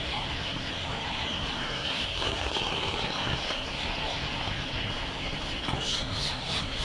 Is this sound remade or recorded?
remade